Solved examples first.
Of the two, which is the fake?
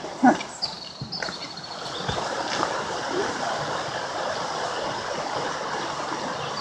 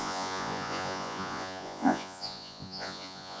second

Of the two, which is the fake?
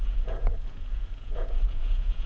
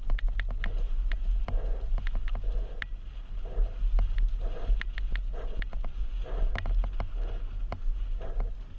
first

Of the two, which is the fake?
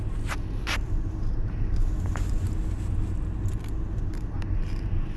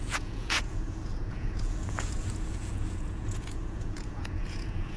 second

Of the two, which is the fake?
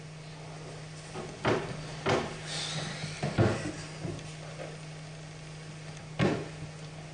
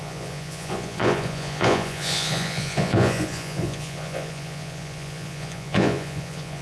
second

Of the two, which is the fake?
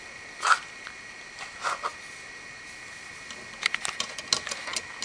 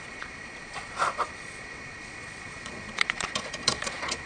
second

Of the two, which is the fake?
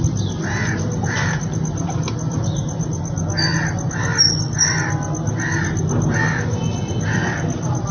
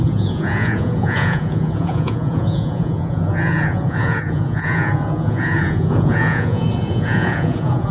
second